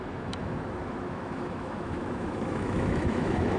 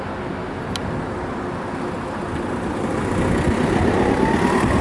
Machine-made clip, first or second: first